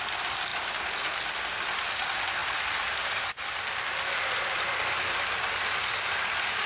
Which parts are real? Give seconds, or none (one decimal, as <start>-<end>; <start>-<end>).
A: 0.0-6.7